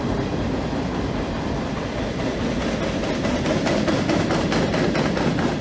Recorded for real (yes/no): yes